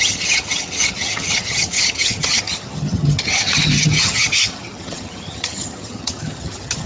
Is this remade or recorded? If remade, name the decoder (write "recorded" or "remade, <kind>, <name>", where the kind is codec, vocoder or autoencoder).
remade, vocoder, HiFi-GAN